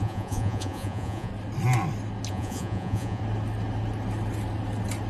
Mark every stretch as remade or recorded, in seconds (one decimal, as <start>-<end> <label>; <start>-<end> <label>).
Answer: 0.0-1.3 remade; 1.3-2.3 recorded; 2.3-3.2 remade; 3.2-5.1 recorded